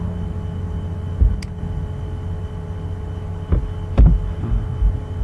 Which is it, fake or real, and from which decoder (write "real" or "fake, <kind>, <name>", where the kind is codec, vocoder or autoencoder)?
real